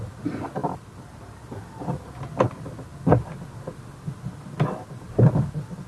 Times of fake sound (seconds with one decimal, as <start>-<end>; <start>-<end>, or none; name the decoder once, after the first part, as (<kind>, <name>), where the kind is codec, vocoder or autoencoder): 0.6-1.4 (vocoder, BigVGAN v2)